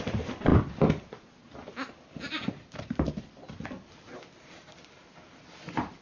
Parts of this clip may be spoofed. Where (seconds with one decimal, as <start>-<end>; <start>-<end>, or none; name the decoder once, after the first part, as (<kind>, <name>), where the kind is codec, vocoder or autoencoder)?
none